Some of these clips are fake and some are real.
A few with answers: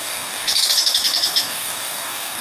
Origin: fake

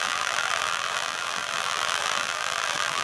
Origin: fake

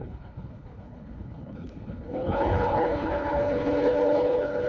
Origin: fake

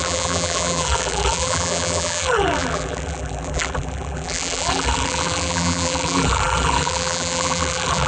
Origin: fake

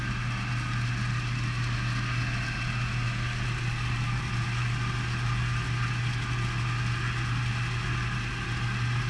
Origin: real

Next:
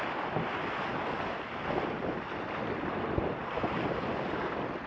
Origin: real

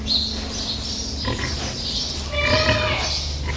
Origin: real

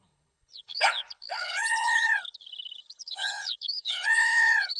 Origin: fake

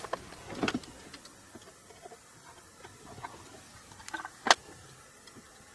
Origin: real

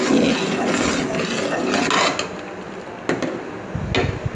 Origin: real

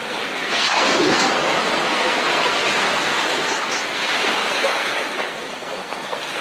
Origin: fake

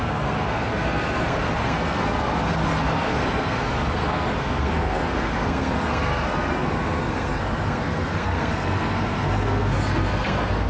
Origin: fake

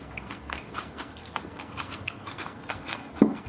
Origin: fake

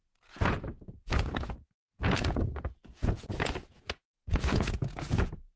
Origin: fake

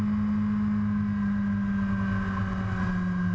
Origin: real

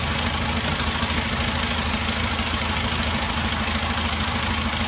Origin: real